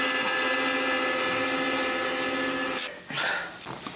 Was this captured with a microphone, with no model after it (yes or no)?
yes